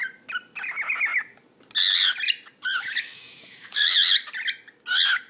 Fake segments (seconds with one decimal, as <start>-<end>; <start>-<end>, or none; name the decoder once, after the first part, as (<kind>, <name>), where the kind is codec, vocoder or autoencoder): 3.1-4.2 (autoencoder, DAC-VAE)